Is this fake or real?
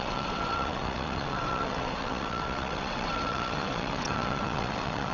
fake